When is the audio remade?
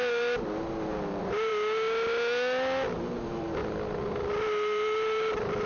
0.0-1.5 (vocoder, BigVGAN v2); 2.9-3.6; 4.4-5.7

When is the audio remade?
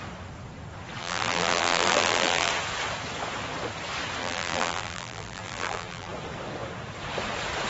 1.0-2.5 (vocoder, BigVGAN v2); 4.2-6.1